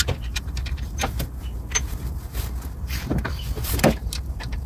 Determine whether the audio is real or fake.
fake